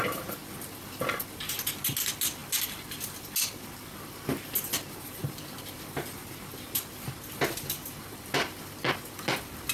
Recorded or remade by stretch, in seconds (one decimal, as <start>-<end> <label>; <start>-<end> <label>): 0.0-9.7 recorded